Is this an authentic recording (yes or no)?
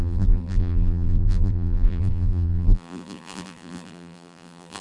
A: no